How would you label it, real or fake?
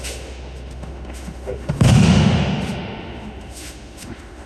fake